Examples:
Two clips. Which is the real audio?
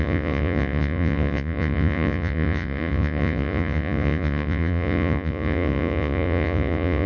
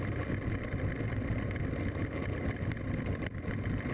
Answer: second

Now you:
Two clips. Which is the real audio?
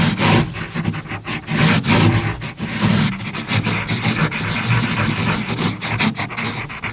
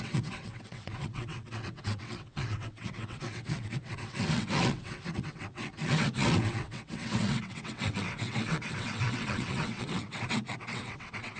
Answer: first